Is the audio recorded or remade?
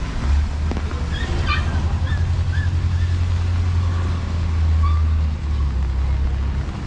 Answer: recorded